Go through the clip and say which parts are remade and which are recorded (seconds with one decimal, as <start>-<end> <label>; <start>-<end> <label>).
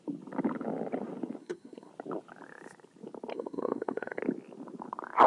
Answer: 0.0-1.4 recorded; 1.4-1.9 remade; 1.9-3.3 recorded; 3.3-4.2 remade; 4.2-5.3 recorded